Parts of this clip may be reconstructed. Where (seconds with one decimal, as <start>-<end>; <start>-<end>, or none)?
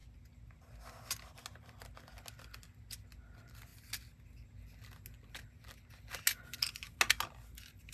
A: none